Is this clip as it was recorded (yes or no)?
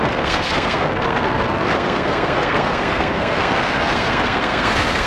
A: no